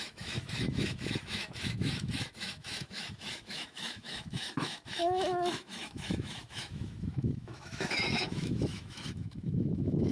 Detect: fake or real fake